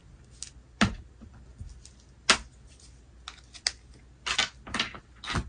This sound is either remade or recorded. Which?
recorded